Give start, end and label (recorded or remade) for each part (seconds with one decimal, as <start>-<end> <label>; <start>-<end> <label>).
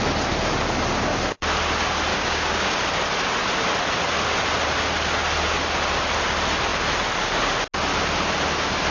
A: 0.0-2.1 recorded; 2.1-2.8 remade; 2.8-8.9 recorded